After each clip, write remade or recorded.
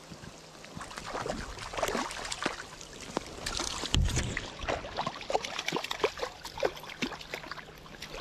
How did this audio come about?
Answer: recorded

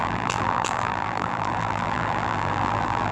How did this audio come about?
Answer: remade